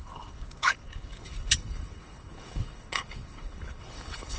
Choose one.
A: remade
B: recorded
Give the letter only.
A